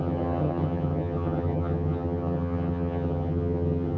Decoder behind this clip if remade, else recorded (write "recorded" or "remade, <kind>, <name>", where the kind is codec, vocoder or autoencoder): remade, vocoder, HiFi-GAN